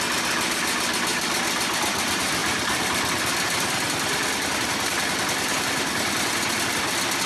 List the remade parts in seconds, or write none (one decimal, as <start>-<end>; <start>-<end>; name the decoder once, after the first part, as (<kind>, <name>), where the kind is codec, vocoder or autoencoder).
1.1-1.8 (vocoder, BigVGAN v2); 2.4-6.8